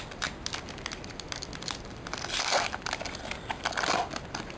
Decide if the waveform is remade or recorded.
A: recorded